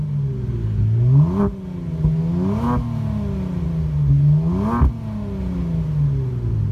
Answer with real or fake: real